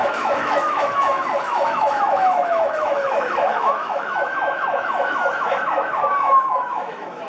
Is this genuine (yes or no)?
no